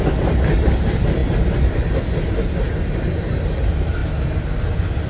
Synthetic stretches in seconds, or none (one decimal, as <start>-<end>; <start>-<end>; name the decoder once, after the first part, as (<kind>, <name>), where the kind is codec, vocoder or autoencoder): none